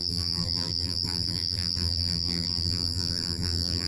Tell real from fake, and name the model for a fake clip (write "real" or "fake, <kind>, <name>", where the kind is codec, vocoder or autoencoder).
fake, vocoder, BigVGAN v2